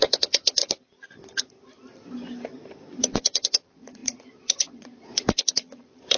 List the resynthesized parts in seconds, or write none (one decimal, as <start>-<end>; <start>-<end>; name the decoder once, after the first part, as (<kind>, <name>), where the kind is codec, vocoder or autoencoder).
0.0-0.6 (vocoder, Vocos); 3.0-6.2